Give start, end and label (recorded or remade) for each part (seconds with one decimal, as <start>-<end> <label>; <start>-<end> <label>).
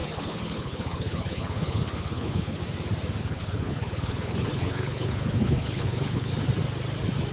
0.0-2.6 remade; 2.6-3.2 recorded; 3.2-6.3 remade; 6.3-7.3 recorded